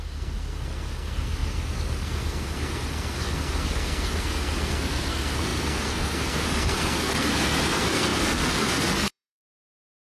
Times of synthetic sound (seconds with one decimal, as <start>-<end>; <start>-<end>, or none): 0.0-10.0